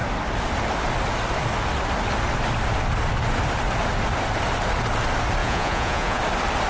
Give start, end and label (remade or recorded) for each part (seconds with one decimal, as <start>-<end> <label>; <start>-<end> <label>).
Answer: 0.0-5.4 recorded; 5.4-6.2 remade; 6.2-6.7 recorded

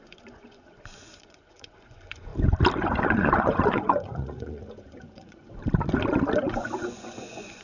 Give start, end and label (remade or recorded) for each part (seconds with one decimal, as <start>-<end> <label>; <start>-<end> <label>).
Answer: 0.0-2.3 remade; 2.3-3.0 recorded; 3.0-5.6 remade; 5.6-6.4 recorded; 6.4-7.6 remade